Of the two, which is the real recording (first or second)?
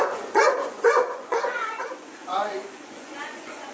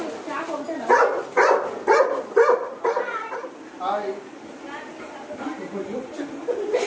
second